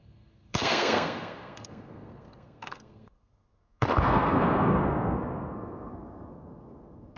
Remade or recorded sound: remade